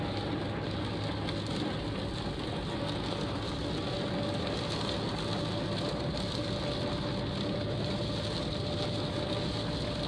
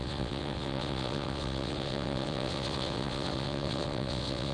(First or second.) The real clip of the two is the first